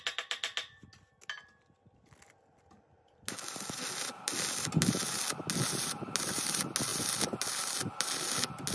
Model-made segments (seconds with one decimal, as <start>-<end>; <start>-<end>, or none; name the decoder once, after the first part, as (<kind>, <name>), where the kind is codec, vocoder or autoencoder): none